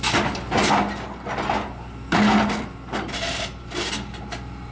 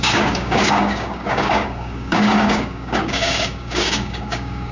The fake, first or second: second